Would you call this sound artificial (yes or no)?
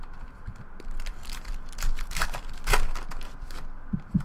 no